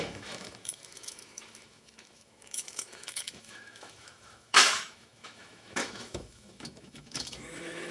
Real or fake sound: fake